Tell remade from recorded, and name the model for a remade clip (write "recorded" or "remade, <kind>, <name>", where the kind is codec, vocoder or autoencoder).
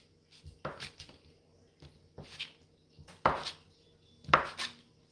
recorded